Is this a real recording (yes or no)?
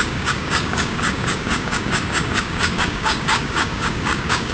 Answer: no